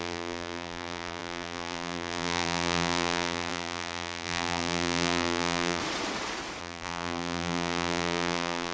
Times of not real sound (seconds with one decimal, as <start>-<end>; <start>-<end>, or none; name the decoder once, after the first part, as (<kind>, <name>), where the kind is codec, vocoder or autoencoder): 0.0-5.8 (vocoder, BigVGAN v2); 6.6-8.7